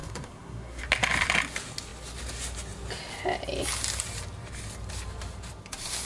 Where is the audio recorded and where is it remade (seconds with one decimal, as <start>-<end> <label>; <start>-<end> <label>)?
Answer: 0.0-0.8 remade; 0.8-6.0 recorded